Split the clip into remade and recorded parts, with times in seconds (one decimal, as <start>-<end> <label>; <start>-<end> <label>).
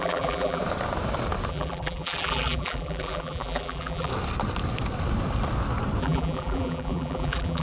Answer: 0.0-0.6 remade; 0.6-1.5 recorded; 1.5-4.1 remade; 4.1-6.0 recorded; 6.0-7.6 remade